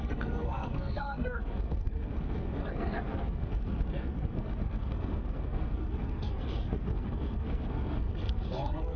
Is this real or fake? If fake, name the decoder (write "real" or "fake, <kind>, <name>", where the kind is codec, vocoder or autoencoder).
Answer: fake, codec, SNAC